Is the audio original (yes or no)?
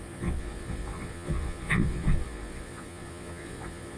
no